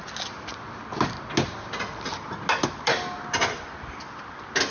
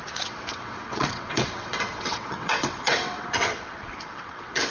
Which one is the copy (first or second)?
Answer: second